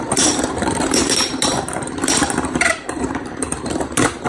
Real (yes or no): no